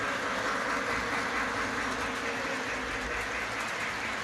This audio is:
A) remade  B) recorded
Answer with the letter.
B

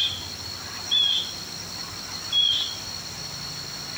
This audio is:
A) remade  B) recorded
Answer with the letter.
B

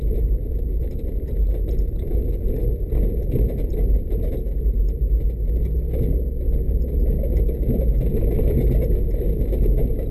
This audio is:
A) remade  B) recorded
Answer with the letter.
B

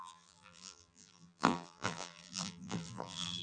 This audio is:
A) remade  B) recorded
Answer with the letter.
A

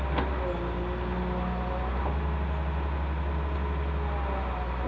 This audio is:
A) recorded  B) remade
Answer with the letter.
A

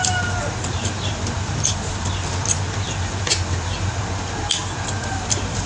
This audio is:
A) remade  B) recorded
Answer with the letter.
A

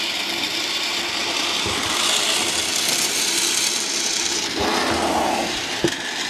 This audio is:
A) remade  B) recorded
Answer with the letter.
A